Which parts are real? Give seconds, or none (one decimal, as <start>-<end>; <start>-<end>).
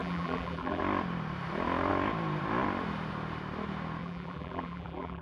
0.8-4.0